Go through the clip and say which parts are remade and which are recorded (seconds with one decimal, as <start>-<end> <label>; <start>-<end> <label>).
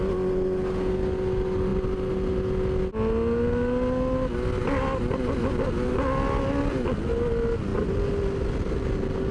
0.0-9.3 recorded